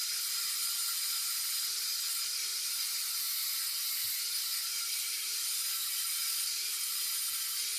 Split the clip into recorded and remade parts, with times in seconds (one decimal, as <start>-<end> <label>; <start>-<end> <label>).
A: 0.0-2.5 recorded; 2.5-3.2 remade; 3.2-4.7 recorded; 4.7-7.1 remade; 7.1-7.8 recorded